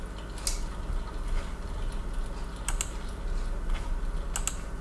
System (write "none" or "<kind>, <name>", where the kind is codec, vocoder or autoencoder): none